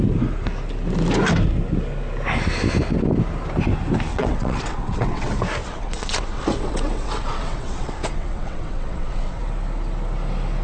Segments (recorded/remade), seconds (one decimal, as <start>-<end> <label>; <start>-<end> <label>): 0.0-4.1 recorded; 4.1-5.3 remade; 5.3-5.7 recorded; 5.7-9.4 remade; 9.4-10.6 recorded